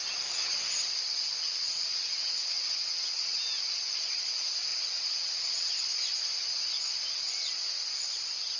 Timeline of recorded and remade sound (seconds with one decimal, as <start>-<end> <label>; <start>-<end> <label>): 0.0-1.4 recorded; 1.4-3.4 remade; 3.4-4.7 recorded; 4.7-5.7 remade; 5.7-8.6 recorded